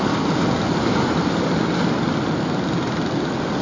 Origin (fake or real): real